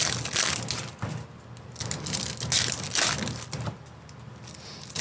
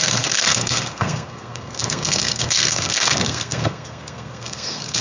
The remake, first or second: second